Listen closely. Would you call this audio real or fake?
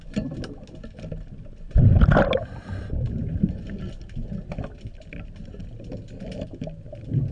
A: real